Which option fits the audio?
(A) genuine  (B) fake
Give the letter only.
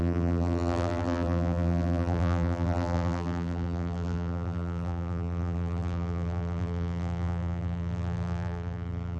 B